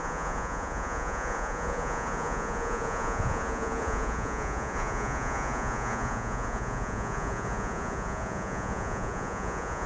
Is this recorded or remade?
remade